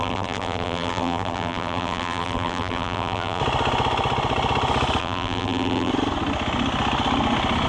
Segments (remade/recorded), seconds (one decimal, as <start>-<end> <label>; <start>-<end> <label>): 0.0-3.4 remade; 3.4-5.0 recorded; 5.0-5.9 remade; 5.9-7.7 recorded